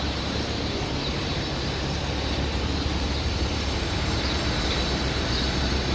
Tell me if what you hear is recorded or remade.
remade